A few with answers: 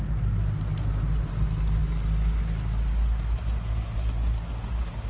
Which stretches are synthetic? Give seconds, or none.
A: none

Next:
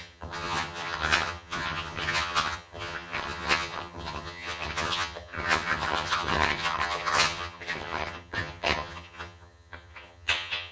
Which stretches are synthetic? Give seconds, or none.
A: 0.0-10.7 (vocoder, HiFi-GAN)

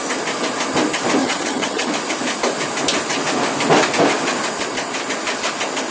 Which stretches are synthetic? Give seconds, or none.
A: 1.2-1.9 (vocoder, HiFi-GAN)

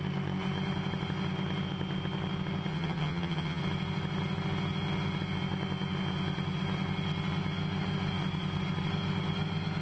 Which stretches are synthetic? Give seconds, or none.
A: 2.7-3.6 (vocoder, HiFi-GAN)

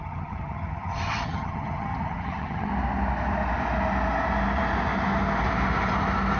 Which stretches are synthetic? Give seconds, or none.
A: 0.0-2.7 (vocoder, HiFi-GAN)

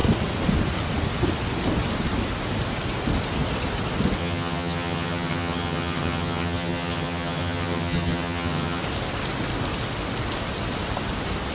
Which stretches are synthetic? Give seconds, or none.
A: 4.2-8.8 (vocoder, HiFi-GAN)

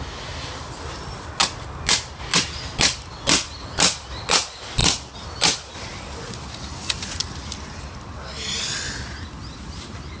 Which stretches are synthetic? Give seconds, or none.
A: none

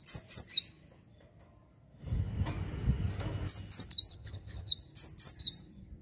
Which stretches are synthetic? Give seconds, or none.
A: 4.1-4.7 (vocoder, HiFi-GAN)